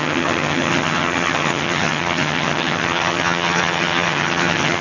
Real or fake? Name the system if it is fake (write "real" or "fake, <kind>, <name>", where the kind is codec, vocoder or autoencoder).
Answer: fake, vocoder, HiFi-GAN